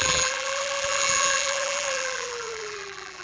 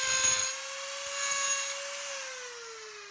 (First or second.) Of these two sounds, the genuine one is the second